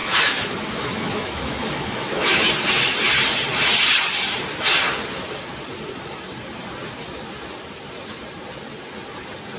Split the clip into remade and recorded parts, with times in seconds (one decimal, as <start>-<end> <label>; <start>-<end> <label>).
0.0-2.5 remade; 2.5-9.6 recorded